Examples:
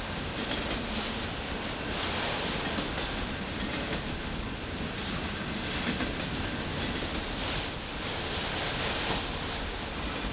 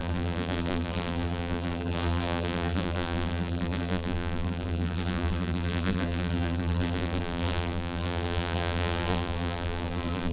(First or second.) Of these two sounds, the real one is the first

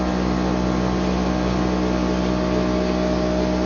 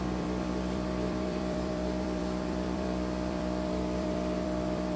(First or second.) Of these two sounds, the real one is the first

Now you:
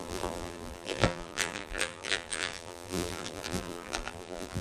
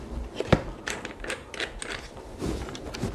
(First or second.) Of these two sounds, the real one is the second